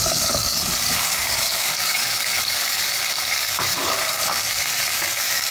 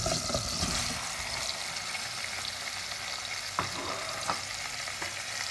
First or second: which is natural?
second